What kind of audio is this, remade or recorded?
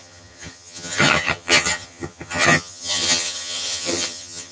remade